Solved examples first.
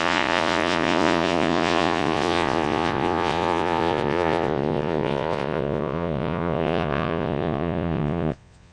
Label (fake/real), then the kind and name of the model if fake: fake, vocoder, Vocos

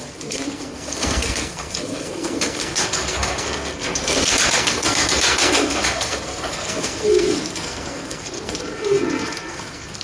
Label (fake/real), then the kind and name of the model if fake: fake, codec, SNAC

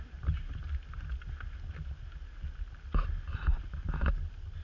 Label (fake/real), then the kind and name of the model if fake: real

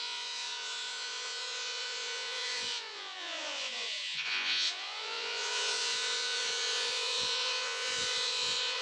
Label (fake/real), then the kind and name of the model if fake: fake, vocoder, Vocos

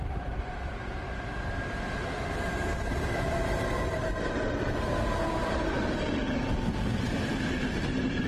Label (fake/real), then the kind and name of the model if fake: fake, vocoder, BigVGAN v2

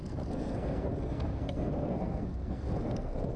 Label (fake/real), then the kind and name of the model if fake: fake, codec, SNAC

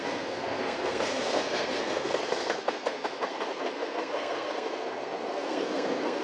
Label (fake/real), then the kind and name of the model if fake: fake, codec, SNAC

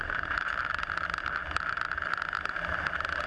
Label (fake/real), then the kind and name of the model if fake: real